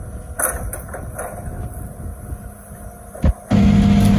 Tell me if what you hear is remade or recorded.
recorded